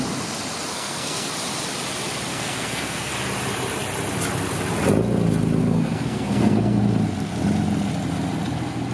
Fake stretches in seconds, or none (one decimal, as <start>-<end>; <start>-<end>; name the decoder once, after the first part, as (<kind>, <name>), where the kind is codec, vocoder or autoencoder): 0.7-1.3 (codec, SNAC); 2.3-3.1; 5.6-6.8